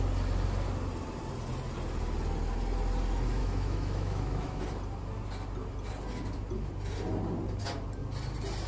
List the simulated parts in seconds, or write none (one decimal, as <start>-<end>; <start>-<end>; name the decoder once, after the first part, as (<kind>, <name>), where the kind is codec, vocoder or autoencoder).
3.4-4.6 (autoencoder, DAC-VAE)